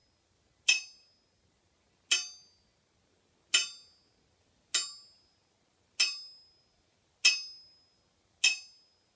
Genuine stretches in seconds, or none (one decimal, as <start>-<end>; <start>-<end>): 0.0-9.2